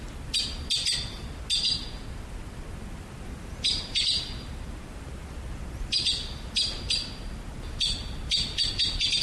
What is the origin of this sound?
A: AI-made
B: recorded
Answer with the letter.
B